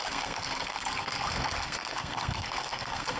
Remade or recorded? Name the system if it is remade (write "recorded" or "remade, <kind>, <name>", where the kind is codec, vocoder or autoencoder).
remade, codec, SNAC